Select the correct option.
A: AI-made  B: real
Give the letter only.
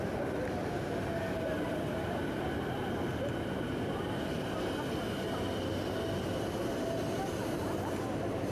B